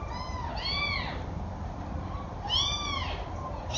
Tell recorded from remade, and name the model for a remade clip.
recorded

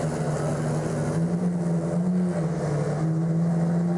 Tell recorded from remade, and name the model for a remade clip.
recorded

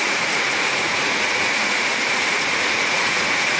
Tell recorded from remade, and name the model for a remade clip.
remade, vocoder, Vocos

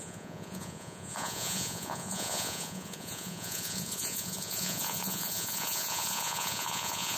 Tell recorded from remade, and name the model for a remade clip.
remade, vocoder, Vocos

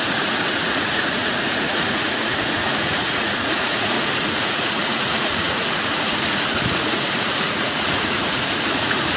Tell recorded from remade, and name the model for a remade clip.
remade, vocoder, Vocos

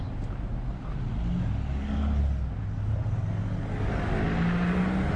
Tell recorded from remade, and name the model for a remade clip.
recorded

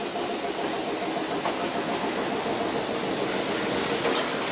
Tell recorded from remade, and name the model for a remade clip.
recorded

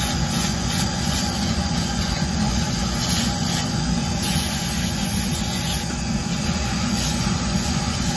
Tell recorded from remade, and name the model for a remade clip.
remade, vocoder, Vocos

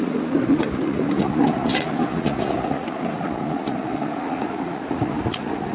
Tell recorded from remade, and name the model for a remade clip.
remade, vocoder, Vocos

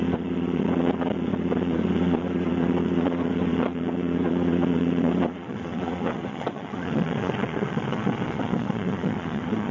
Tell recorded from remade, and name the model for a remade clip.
remade, vocoder, Vocos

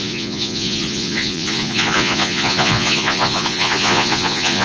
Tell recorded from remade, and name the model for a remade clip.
remade, vocoder, Vocos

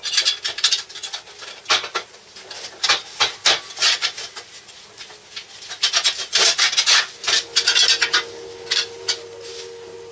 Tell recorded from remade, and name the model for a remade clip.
recorded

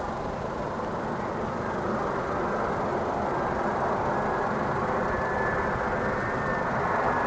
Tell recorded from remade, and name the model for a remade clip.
recorded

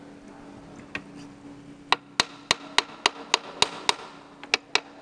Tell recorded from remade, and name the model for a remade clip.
recorded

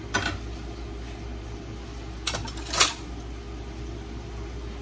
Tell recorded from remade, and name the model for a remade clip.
recorded